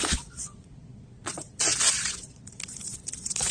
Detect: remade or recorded remade